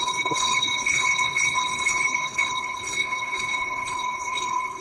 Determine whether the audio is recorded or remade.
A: remade